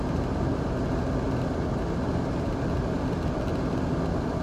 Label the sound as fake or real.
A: real